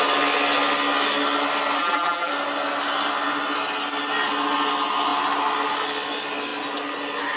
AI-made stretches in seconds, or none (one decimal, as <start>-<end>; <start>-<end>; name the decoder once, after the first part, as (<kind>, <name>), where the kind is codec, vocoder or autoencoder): 1.8-2.3 (vocoder, BigVGAN v2)